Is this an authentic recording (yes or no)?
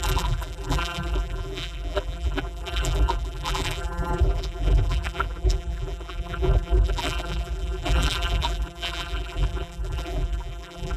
no